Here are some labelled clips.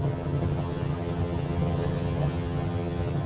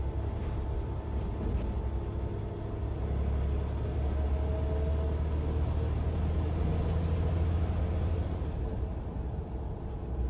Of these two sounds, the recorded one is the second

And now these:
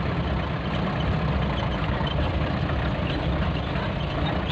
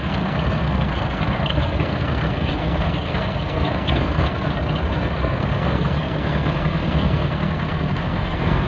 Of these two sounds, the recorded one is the first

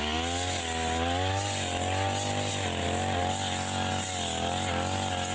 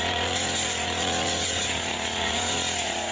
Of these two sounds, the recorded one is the first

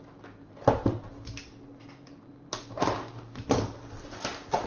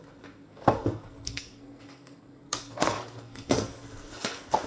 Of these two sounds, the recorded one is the first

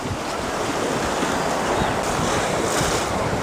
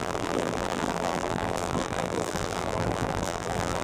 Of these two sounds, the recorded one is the first